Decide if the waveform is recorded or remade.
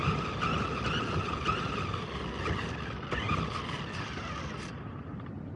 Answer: recorded